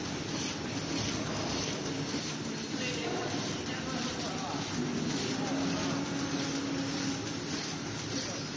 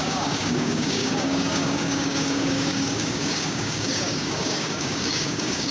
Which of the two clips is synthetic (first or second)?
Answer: second